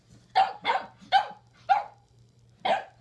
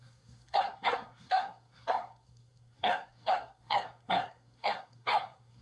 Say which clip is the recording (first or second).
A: first